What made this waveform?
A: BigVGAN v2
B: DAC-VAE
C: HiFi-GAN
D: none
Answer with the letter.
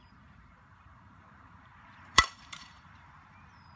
A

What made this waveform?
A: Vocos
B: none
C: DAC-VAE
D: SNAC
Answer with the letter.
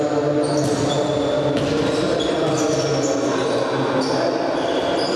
B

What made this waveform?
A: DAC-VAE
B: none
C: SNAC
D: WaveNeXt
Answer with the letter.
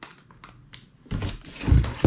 B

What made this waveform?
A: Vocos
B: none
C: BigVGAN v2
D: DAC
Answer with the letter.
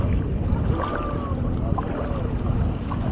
B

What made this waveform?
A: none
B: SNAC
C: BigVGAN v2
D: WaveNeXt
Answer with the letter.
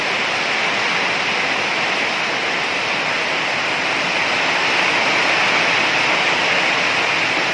A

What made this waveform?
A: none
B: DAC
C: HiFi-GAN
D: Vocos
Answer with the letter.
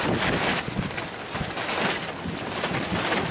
A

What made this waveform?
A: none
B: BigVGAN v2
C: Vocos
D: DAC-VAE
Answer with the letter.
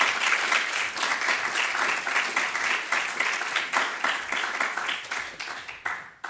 A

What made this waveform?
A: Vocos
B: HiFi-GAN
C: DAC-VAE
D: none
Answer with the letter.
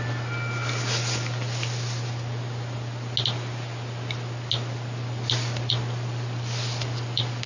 D